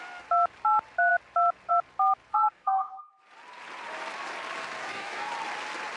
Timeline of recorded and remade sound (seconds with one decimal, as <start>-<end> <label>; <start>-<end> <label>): 0.0-2.3 recorded; 2.3-3.1 remade; 3.1-4.8 recorded; 4.8-5.3 remade; 5.3-6.0 recorded